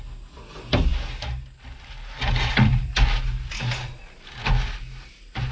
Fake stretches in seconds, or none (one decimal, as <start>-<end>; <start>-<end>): none